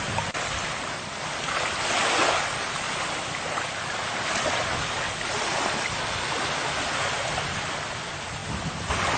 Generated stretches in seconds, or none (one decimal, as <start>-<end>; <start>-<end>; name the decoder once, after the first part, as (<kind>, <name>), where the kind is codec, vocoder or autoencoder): none